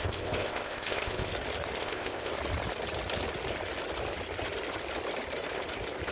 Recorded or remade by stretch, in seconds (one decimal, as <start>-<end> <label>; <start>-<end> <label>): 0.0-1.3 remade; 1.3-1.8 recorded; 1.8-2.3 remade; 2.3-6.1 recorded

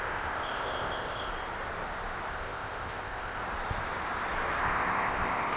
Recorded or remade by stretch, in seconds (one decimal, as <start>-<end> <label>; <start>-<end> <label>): 0.0-1.3 remade; 1.3-2.3 recorded; 2.3-3.4 remade; 3.4-4.6 recorded; 4.6-5.6 remade

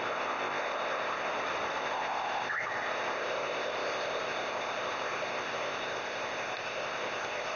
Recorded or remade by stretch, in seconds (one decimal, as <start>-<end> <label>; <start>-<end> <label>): 0.0-1.3 remade; 1.3-1.8 recorded; 1.8-7.6 remade

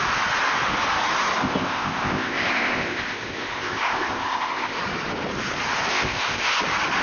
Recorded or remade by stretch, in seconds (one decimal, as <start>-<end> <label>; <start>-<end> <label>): 0.0-1.4 recorded; 1.4-4.8 remade; 4.8-5.9 recorded; 5.9-6.6 remade; 6.6-7.0 recorded

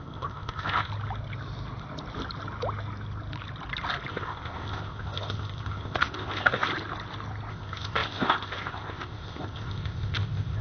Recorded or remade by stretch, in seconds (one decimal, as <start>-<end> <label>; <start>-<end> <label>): 0.0-0.9 remade; 0.9-4.1 recorded; 4.1-6.7 remade; 6.7-7.5 recorded; 7.5-10.6 remade

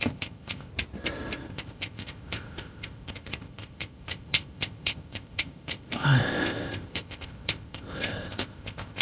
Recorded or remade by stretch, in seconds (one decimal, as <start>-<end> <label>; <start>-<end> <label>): 0.0-0.7 remade; 0.7-1.5 recorded; 1.5-9.0 remade

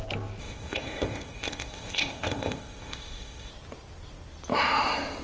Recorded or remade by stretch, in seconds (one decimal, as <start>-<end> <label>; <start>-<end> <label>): 0.0-0.4 recorded; 0.4-3.5 remade; 3.5-5.2 recorded

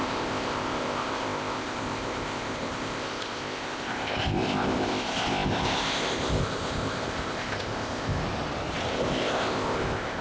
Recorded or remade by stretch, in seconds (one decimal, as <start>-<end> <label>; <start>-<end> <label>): 0.0-8.2 remade; 8.2-8.9 recorded; 8.9-10.2 remade